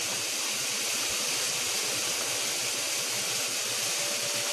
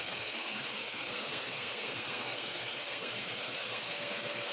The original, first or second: first